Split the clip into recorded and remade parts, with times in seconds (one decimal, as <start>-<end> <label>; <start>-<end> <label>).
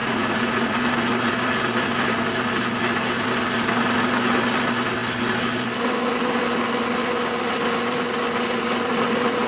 0.0-0.8 remade; 0.8-9.5 recorded